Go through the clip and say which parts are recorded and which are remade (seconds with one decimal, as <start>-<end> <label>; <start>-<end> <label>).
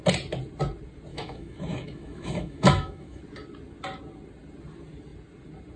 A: 0.0-1.1 recorded; 1.1-3.2 remade; 3.2-5.8 recorded